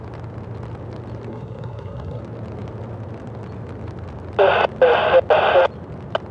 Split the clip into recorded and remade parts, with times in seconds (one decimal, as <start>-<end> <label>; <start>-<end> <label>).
0.0-1.3 recorded; 1.3-2.2 remade; 2.2-6.3 recorded